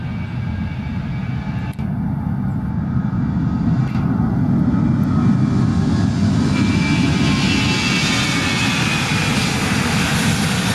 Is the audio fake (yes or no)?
no